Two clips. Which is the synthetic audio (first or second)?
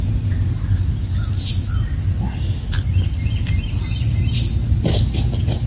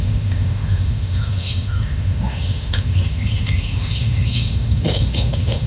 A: second